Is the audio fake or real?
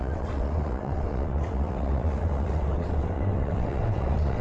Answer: fake